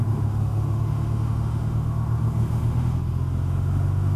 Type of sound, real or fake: fake